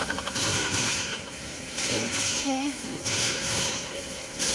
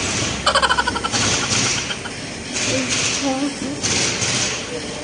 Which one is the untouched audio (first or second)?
second